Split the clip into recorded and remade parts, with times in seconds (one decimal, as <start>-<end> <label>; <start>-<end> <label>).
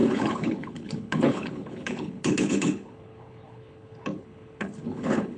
0.0-5.4 remade